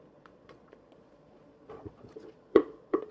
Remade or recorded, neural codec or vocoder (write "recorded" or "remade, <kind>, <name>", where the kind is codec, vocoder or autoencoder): remade, vocoder, Vocos